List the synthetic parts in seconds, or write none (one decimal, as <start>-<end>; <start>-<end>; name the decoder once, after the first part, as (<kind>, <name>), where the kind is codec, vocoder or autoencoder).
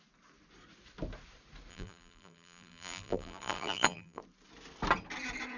1.7-4.2 (vocoder, BigVGAN v2)